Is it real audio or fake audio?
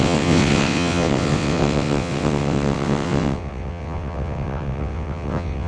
fake